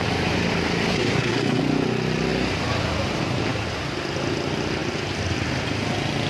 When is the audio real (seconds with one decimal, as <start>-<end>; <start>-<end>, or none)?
0.0-0.9; 1.6-6.3